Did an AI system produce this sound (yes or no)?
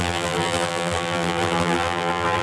yes